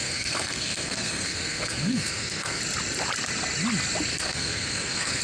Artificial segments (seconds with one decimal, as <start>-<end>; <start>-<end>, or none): 0.0-2.6; 4.1-5.2

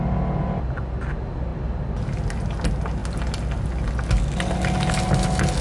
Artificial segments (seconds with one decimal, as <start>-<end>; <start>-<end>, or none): none

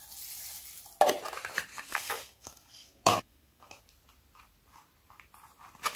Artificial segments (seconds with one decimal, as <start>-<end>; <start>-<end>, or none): 1.7-3.8

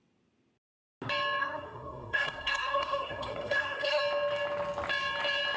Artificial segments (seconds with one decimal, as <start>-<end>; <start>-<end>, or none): 1.4-4.0

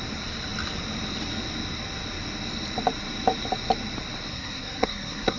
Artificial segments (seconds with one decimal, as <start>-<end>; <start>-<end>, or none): 4.3-5.4

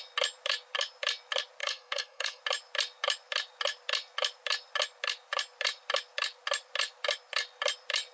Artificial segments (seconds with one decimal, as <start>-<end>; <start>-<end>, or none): 1.6-2.4